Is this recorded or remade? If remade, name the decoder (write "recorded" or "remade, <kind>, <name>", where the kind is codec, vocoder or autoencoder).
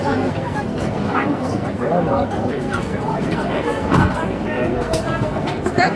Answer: remade, codec, SNAC